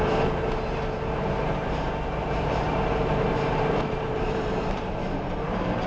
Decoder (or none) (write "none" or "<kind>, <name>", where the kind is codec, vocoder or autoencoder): vocoder, BigVGAN v2